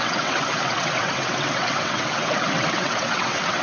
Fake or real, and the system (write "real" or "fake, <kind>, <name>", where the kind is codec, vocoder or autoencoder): fake, vocoder, WaveNeXt